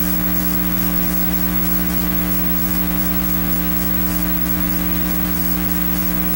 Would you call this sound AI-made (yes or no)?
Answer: no